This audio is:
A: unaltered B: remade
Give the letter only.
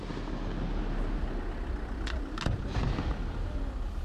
A